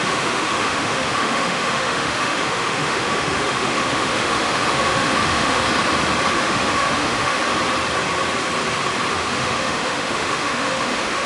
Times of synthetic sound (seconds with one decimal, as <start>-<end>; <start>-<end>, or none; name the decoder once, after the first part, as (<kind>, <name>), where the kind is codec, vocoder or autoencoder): 0.0-5.6 (autoencoder, DAC-VAE); 6.3-7.4; 9.1-11.3

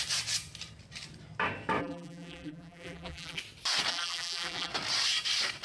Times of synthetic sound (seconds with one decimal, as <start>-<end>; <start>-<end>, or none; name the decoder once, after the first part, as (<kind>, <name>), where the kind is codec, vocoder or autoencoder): 1.8-3.4 (vocoder, BigVGAN v2); 3.9-4.7